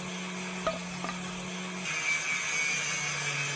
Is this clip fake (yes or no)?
no